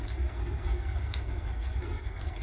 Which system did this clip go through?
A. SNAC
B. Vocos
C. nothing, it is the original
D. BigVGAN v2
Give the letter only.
A